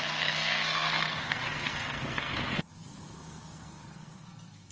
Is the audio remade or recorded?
remade